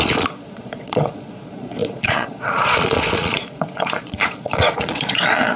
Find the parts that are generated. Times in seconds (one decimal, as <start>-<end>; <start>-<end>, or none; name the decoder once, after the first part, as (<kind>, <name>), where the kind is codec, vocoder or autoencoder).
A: 0.0-5.6 (vocoder, Vocos)